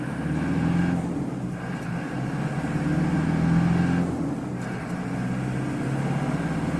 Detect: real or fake real